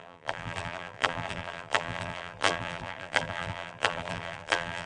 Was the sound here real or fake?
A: fake